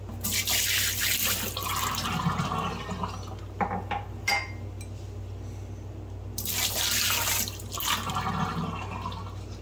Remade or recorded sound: recorded